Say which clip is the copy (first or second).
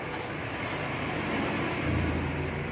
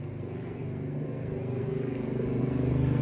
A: second